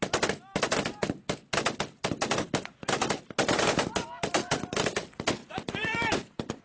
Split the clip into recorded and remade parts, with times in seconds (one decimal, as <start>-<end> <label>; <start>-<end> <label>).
0.0-5.4 recorded; 5.4-6.6 remade